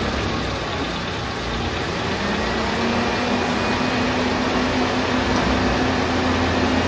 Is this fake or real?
real